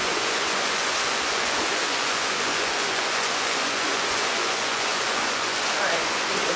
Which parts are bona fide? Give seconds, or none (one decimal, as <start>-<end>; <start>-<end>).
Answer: none